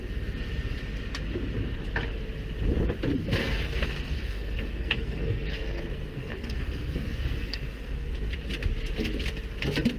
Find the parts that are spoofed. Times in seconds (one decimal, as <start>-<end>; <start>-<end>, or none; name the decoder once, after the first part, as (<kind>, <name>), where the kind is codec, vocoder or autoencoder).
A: 3.4-8.3 (codec, SNAC)